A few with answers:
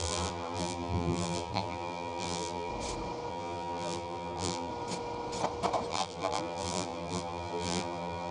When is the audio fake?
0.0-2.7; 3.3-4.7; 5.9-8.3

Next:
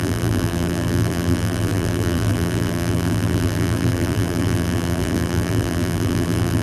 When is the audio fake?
0.0-6.6

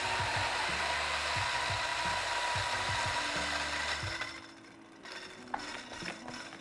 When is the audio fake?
none

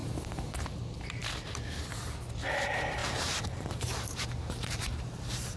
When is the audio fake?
0.0-0.6; 3.0-5.6

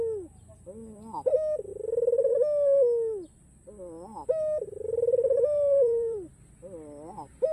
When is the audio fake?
4.7-6.3

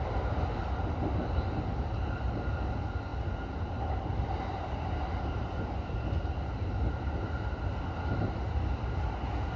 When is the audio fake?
none

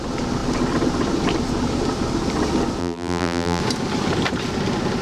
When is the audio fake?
2.8-3.6

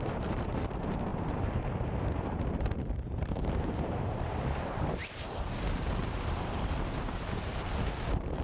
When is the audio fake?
0.0-7.5; 8.0-8.4